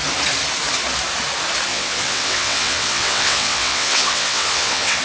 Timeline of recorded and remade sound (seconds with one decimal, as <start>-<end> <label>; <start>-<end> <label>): 0.0-1.7 recorded; 1.7-5.0 remade